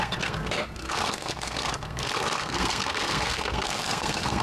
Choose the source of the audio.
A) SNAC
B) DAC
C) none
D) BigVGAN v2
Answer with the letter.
A